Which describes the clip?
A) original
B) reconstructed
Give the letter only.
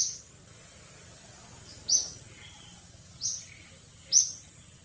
A